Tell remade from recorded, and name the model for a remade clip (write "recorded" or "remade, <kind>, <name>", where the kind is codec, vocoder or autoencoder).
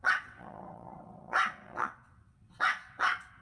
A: remade, vocoder, WaveNeXt